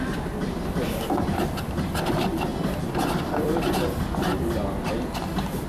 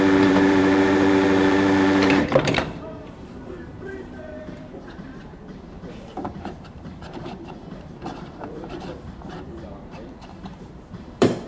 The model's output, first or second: second